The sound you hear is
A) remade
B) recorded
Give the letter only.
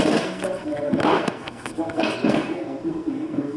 A